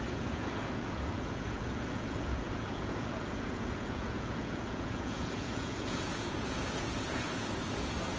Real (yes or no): no